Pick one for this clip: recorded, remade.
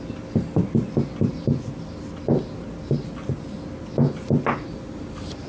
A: recorded